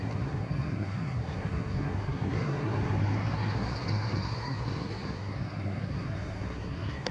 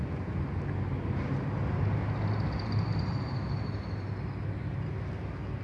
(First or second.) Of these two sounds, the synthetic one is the first